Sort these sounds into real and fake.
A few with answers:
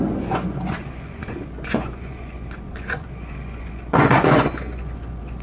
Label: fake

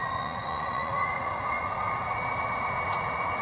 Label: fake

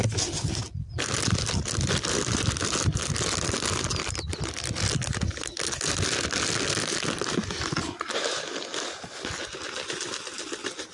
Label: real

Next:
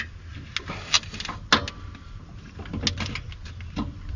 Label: real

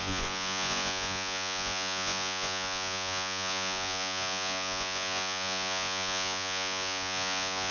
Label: fake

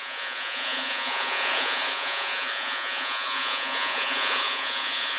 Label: fake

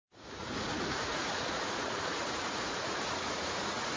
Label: fake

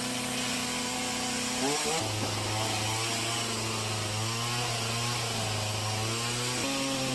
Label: real